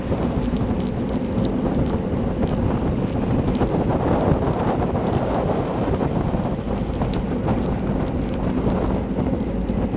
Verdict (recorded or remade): recorded